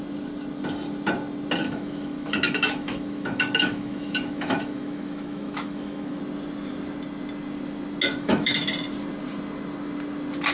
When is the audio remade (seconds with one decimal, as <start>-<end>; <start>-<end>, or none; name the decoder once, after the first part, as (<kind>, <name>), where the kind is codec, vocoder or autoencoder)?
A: 1.6-6.2 (autoencoder, DAC-VAE); 8.1-8.7